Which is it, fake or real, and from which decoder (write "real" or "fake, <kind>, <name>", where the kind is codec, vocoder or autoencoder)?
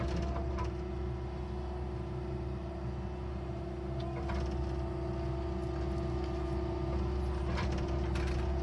real